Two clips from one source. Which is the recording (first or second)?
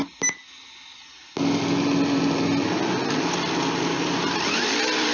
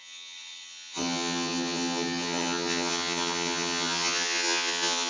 first